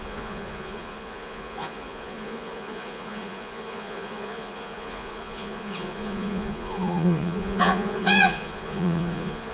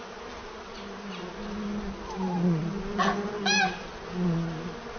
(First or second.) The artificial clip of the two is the first